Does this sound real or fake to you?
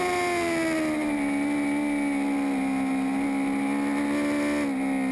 real